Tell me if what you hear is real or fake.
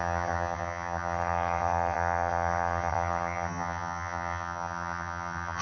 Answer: fake